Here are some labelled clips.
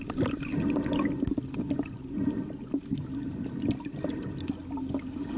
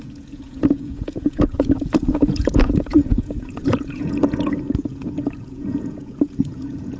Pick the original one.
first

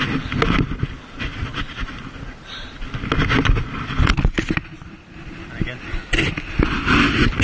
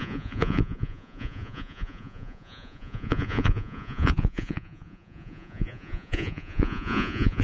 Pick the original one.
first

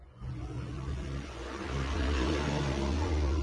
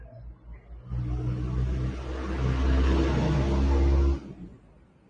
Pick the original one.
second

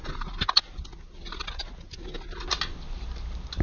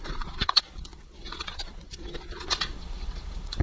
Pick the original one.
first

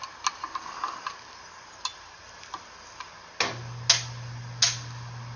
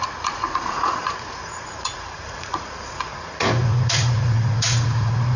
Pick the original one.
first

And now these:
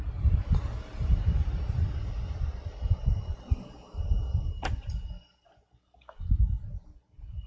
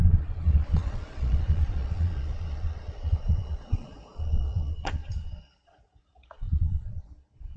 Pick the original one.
first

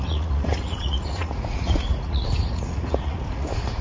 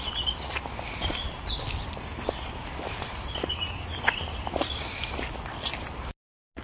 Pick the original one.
second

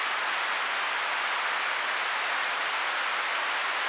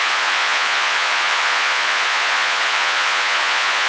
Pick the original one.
first